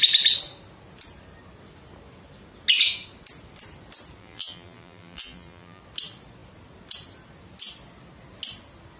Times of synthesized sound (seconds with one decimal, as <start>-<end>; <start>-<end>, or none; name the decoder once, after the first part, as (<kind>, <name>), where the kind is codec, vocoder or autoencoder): 4.2-5.8 (vocoder, BigVGAN v2)